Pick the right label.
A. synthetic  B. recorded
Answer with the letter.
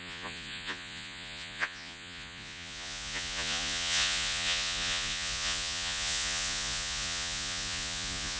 A